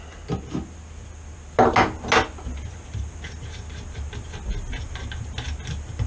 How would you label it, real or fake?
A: real